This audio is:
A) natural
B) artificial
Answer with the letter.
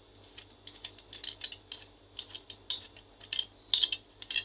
A